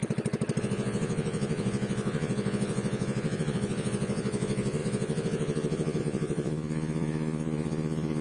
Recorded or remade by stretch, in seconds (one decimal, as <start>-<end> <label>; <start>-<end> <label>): 0.0-0.6 recorded; 0.6-8.2 remade